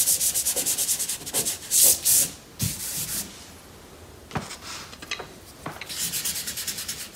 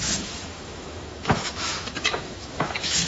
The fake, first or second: second